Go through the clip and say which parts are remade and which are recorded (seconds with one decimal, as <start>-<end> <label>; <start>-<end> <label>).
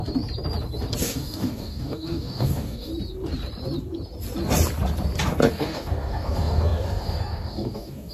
0.0-1.0 recorded; 1.0-2.9 remade; 2.9-5.5 recorded; 5.5-8.1 remade